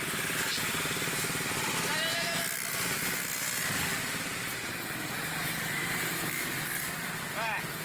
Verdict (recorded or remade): recorded